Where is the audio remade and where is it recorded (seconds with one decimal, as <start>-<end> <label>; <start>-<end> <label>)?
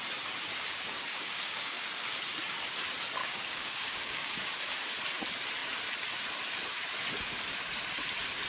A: 0.0-0.5 recorded; 0.5-2.1 remade; 2.1-3.2 recorded; 3.2-4.6 remade; 4.6-8.5 recorded